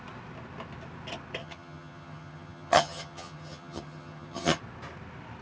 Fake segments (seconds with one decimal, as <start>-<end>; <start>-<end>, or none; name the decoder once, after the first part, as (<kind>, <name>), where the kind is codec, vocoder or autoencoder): 1.4-4.6 (vocoder, HiFi-GAN)

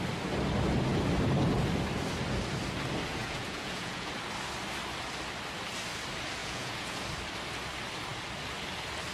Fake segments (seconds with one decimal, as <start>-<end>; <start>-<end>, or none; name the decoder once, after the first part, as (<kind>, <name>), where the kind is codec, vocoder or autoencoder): 3.2-4.1 (vocoder, Vocos); 6.4-7.0

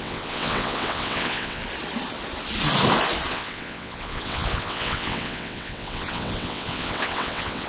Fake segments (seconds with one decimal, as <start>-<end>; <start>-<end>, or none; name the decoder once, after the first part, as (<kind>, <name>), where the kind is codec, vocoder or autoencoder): 0.0-1.6 (vocoder, WaveNeXt); 3.3-7.7

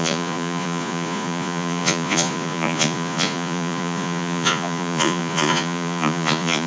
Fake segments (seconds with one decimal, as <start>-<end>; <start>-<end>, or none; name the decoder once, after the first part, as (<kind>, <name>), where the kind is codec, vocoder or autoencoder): 0.0-6.7 (vocoder, Vocos)

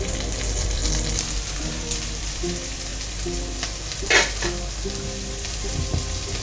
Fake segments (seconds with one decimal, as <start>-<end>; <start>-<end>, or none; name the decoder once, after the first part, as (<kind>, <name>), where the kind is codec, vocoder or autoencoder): 0.0-0.8 (vocoder, BigVGAN v2); 1.6-2.9; 5.3-6.4

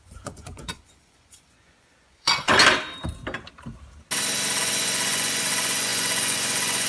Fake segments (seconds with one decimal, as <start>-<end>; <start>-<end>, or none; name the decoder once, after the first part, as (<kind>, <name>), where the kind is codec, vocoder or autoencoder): 0.0-2.5 (vocoder, Vocos); 4.6-6.9

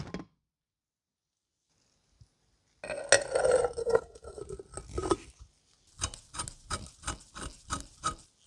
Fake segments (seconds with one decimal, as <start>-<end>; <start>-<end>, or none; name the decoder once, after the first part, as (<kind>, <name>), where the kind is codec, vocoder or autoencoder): 3.8-4.4 (codec, SNAC)